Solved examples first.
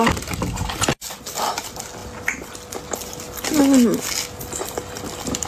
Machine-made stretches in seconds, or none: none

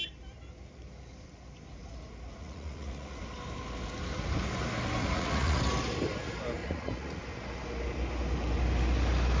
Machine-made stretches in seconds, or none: 2.4-3.2; 5.0-5.6; 6.6-7.2

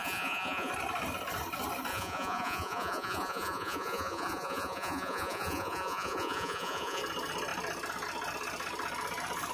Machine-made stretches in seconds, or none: 0.0-0.7; 1.9-7.0

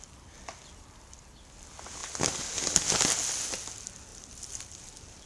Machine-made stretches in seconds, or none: none

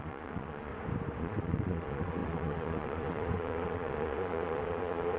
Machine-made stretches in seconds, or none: 0.0-0.7; 1.2-5.2

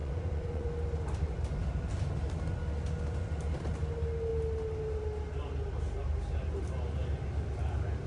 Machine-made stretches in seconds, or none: 0.0-0.7

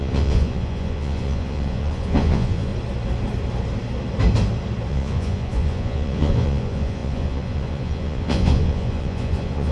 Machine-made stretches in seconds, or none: 0.0-2.7; 4.9-9.7